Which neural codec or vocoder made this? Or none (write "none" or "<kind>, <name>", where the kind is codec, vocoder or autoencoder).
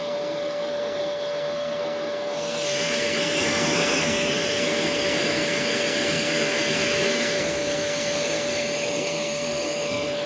codec, SNAC